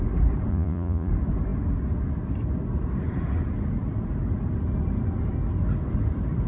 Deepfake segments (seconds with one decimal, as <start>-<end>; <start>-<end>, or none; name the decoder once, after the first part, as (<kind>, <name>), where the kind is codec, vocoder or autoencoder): 0.5-1.1 (vocoder, Vocos)